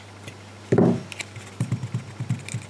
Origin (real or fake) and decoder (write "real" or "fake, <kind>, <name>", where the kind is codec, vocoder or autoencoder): real